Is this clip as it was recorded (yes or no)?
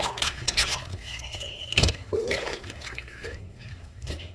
no